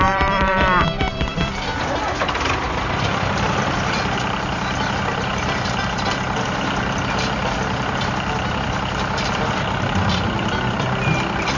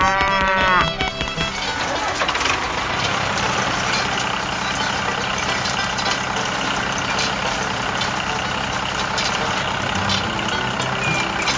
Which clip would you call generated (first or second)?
first